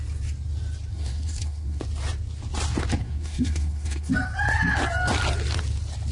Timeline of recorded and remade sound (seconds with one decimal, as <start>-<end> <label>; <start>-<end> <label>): 0.0-0.9 recorded; 0.9-1.8 remade; 1.8-3.0 recorded; 3.0-4.1 remade; 4.1-6.1 recorded